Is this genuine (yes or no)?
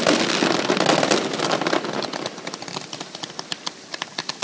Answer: yes